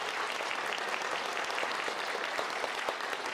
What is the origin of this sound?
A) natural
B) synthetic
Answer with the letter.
A